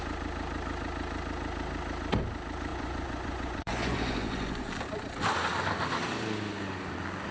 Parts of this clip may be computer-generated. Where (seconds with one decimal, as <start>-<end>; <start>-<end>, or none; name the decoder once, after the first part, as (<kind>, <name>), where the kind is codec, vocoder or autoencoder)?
2.7-4.7 (vocoder, Vocos)

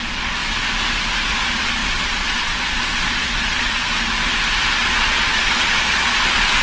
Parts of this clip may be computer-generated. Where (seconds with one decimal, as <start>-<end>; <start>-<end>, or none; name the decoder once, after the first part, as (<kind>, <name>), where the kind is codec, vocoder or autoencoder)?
0.0-0.4 (vocoder, Vocos); 1.3-3.8; 4.8-6.6

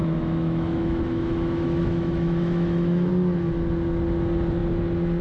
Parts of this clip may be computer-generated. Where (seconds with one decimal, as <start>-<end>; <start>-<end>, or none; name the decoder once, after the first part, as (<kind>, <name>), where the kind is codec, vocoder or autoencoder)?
0.0-3.1 (autoencoder, DAC-VAE)